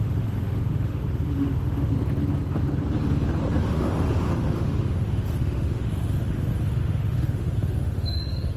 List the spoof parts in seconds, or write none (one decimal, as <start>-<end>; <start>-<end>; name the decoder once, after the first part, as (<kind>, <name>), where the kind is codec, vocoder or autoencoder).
0.0-1.9 (autoencoder, DAC-VAE); 3.6-8.6